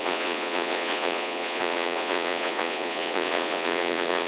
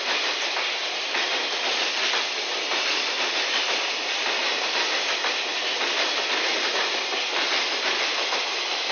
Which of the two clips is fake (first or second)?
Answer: first